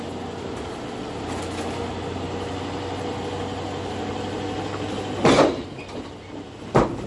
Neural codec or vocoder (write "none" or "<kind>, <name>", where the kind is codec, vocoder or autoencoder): none